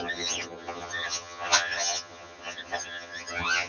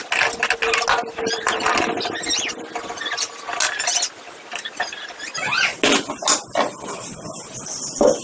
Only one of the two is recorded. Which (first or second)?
second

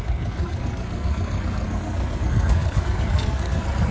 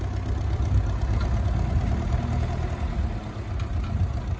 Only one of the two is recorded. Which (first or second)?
second